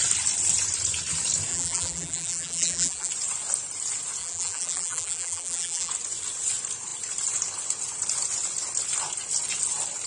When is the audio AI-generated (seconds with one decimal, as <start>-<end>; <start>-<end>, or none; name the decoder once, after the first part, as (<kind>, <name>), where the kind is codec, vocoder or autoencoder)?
1.5-3.1 (vocoder, BigVGAN v2); 4.2-5.9